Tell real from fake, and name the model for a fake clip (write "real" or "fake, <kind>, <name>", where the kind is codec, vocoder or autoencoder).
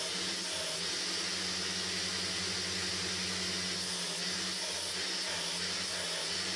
real